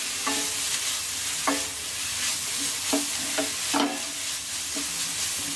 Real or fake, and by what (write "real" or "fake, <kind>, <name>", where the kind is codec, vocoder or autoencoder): real